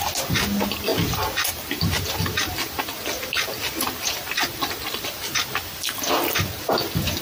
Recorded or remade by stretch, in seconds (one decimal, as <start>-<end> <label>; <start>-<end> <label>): 0.0-7.2 recorded